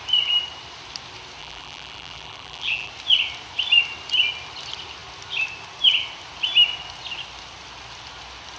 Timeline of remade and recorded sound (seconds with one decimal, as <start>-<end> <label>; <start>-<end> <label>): 0.0-1.4 recorded; 1.4-2.9 remade; 2.9-8.6 recorded